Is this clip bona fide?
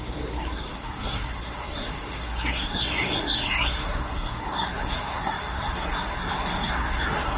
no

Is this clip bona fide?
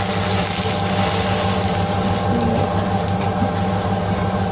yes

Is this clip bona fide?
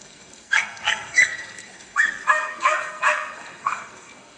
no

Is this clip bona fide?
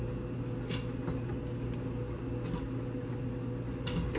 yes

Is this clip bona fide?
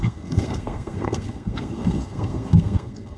no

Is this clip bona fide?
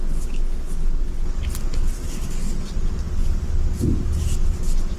yes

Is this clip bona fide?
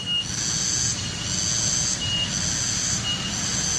yes